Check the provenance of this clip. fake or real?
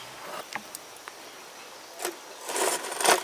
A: real